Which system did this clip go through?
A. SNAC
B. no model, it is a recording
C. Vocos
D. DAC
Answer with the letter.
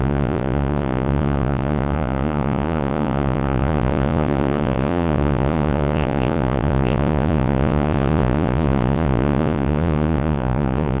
C